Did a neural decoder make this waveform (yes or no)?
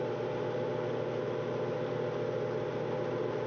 no